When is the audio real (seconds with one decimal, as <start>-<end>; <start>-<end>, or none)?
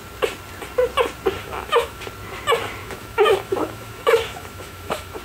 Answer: 0.0-1.4; 2.0-2.8